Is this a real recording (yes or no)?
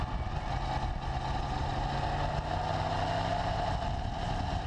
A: yes